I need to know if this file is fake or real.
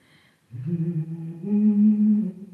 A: fake